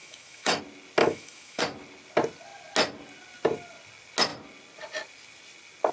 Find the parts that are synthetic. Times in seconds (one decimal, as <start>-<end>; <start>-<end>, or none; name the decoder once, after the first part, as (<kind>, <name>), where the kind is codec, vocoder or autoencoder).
0.0-0.6 (autoencoder, DAC-VAE); 1.0-1.6